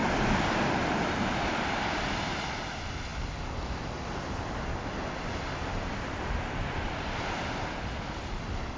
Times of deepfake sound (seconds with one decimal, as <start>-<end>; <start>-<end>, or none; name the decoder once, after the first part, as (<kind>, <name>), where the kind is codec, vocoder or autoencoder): none